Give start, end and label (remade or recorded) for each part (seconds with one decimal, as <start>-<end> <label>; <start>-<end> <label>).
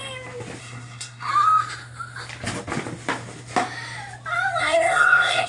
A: 0.0-0.6 recorded; 0.6-1.3 remade; 1.3-4.6 recorded; 4.6-5.5 remade